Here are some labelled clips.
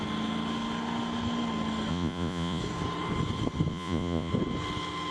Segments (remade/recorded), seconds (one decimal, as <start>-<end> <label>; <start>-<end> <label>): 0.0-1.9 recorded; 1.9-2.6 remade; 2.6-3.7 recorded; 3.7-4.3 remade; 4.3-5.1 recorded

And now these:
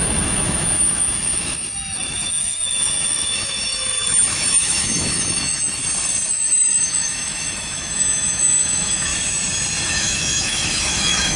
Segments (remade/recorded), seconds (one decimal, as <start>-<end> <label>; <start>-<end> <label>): 0.0-5.8 remade; 5.8-6.3 recorded; 6.3-9.1 remade; 9.1-9.9 recorded; 9.9-11.4 remade

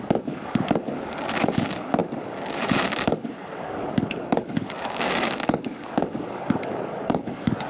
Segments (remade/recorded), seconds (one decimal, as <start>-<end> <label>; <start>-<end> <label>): 0.0-7.7 remade

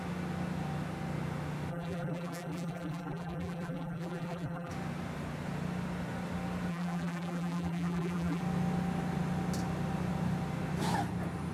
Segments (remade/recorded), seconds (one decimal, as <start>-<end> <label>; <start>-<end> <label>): 0.0-1.7 recorded; 1.7-4.7 remade; 4.7-6.7 recorded; 6.7-8.4 remade; 8.4-11.5 recorded

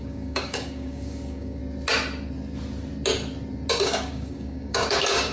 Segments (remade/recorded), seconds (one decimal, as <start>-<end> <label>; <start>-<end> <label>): 0.0-1.6 remade; 1.6-3.7 recorded; 3.7-5.3 remade

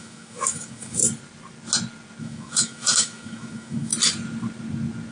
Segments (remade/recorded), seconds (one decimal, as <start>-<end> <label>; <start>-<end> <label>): 0.0-1.0 remade; 1.0-2.2 recorded; 2.2-3.9 remade; 3.9-5.1 recorded

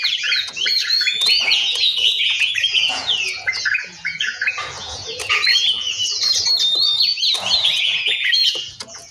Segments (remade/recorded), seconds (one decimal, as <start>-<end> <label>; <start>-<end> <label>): 0.0-6.0 remade; 6.0-7.0 recorded; 7.0-9.1 remade

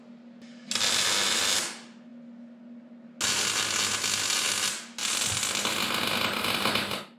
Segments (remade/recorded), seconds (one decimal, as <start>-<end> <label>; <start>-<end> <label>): 0.0-7.2 recorded